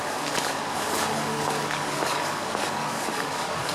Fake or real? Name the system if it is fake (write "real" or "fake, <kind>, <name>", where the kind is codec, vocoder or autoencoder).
fake, codec, DAC